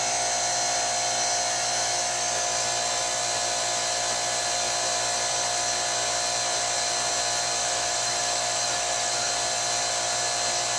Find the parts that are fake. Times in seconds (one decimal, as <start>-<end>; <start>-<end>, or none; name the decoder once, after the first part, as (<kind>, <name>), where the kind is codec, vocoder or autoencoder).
7.6-9.3 (autoencoder, DAC-VAE)